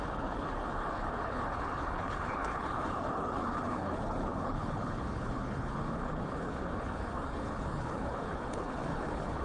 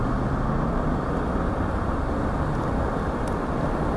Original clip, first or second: second